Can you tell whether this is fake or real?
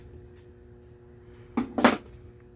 real